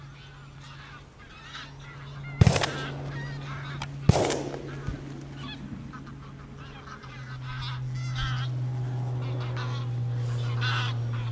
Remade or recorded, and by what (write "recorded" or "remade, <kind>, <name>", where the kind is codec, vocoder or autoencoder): recorded